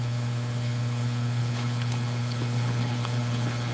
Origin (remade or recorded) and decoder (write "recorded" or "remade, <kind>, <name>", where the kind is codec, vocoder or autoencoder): remade, codec, HILCodec